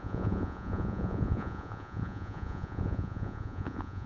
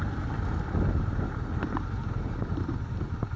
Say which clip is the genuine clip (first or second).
second